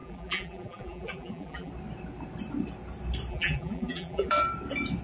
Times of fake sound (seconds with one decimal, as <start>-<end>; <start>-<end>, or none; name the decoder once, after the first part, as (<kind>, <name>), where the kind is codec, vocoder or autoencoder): 0.0-1.7 (vocoder, BigVGAN v2); 3.3-4.3